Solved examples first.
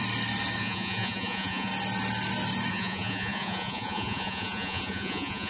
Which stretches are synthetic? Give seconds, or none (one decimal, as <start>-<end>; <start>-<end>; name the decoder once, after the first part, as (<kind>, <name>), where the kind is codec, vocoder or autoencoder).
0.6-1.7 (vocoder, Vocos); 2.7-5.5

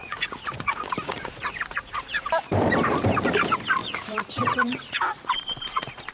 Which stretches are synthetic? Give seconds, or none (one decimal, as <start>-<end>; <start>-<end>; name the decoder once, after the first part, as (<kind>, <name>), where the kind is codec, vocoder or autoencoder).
0.0-2.1 (vocoder, Vocos); 3.8-6.1

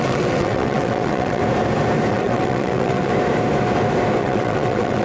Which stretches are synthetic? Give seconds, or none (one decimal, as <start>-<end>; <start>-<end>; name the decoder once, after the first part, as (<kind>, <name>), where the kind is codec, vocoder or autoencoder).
0.0-1.4 (vocoder, WaveNeXt); 2.1-3.1; 4.2-5.0

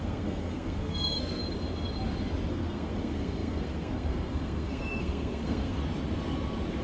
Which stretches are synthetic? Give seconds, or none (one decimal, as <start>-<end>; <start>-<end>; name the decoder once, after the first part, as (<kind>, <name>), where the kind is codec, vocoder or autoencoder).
0.0-1.4 (codec, SNAC); 2.5-5.8

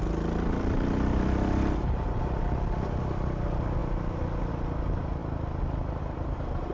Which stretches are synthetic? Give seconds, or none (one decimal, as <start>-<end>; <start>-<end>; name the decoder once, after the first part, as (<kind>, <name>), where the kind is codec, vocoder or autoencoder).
none